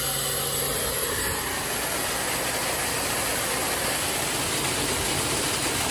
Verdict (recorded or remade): recorded